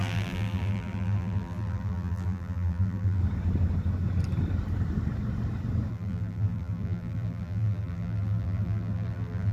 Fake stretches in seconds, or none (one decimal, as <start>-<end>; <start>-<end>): 0.0-3.2; 5.9-9.5